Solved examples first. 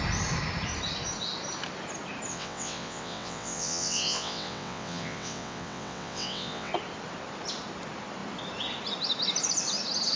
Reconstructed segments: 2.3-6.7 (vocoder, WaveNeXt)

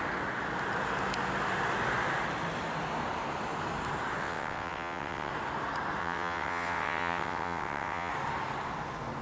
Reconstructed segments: 4.2-5.3 (vocoder, WaveNeXt); 6.0-8.1

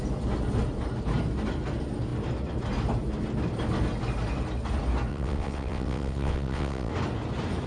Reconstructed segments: 5.1-6.9 (vocoder, WaveNeXt)

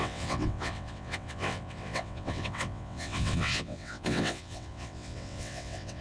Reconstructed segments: 0.0-6.0 (vocoder, WaveNeXt)

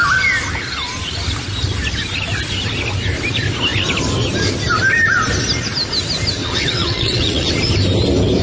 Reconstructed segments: 6.4-7.5 (vocoder, WaveNeXt)